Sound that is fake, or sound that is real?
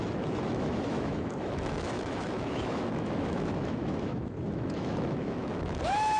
fake